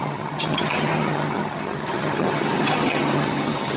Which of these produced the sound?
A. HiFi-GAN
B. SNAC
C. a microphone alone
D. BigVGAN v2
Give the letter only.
A